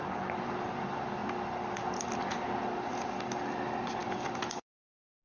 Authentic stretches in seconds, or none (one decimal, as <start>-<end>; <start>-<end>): 0.0-5.2